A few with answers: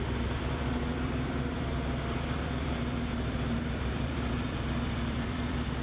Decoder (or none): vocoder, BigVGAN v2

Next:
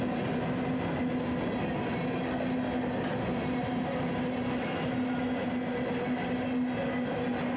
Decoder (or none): none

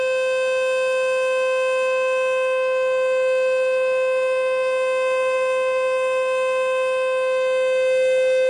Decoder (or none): none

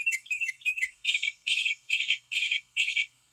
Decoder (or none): codec, SNAC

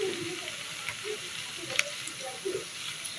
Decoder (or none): none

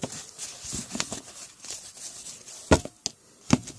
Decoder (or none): none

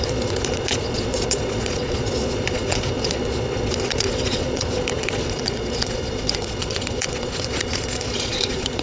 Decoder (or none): vocoder, Vocos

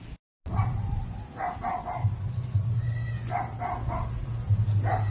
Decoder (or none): none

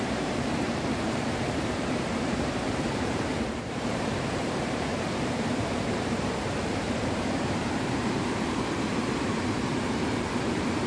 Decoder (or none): vocoder, BigVGAN v2